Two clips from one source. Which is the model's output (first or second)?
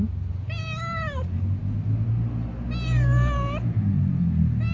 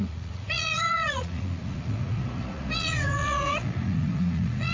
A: second